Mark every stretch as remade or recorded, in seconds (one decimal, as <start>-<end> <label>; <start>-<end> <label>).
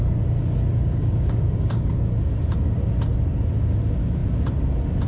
0.0-0.7 recorded; 0.7-1.9 remade; 1.9-5.1 recorded